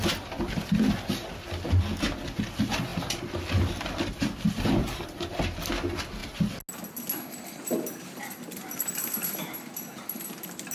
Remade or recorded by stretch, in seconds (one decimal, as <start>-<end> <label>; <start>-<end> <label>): 0.0-6.2 remade; 6.2-7.3 recorded; 7.3-10.7 remade